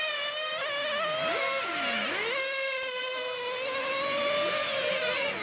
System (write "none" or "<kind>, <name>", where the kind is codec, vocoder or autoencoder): none